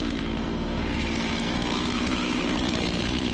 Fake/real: fake